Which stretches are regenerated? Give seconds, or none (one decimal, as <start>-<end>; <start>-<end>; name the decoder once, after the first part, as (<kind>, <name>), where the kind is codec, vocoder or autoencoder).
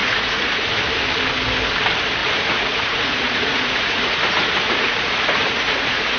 0.0-0.7 (vocoder, Vocos); 2.2-6.2